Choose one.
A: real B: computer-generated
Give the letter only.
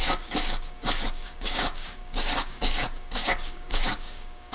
B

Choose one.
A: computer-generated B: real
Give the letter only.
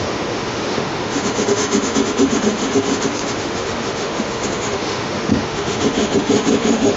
A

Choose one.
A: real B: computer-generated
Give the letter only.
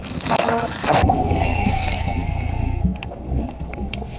B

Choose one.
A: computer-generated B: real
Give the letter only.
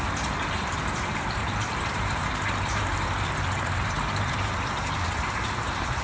A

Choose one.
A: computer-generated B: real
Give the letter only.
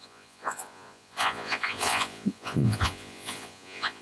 A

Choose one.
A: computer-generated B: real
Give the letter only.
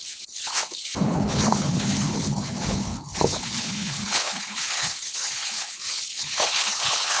A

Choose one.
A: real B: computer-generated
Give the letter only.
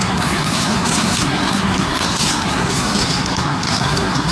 B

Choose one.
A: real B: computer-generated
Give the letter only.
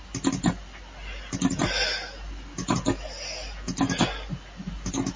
A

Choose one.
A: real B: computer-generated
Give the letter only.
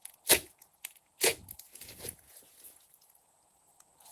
B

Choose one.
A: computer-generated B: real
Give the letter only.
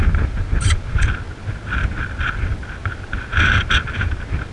B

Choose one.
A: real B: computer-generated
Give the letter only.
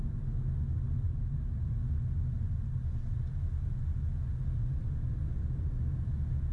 A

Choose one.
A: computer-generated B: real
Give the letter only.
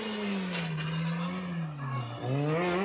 B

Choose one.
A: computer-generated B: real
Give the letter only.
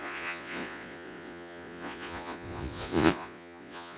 A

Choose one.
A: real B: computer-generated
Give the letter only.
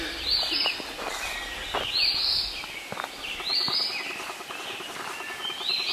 A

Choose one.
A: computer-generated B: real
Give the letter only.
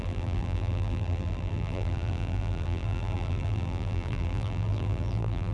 A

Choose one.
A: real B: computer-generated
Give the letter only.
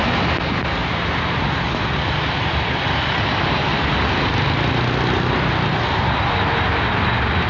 A